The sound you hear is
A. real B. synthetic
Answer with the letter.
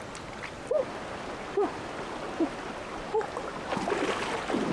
A